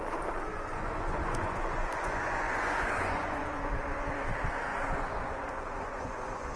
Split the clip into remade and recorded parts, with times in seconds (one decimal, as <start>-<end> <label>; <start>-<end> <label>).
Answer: 0.0-0.5 recorded; 0.5-3.7 remade; 3.7-4.7 recorded; 4.7-6.6 remade